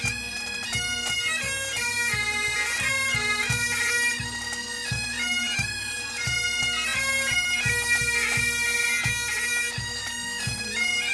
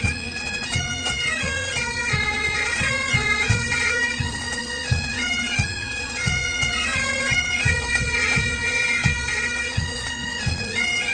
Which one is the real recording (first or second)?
first